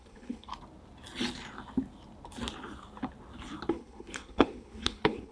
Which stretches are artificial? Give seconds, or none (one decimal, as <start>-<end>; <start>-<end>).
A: 0.0-0.5; 3.7-5.3